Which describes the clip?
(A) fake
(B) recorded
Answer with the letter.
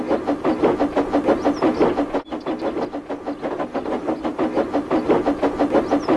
B